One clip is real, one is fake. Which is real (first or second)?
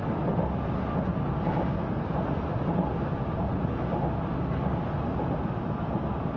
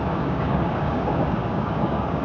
first